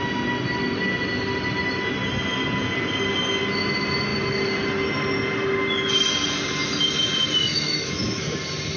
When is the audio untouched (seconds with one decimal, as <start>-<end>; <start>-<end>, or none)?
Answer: 0.0-7.5; 8.2-8.8